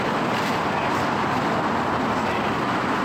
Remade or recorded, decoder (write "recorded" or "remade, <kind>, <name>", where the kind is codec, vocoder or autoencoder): recorded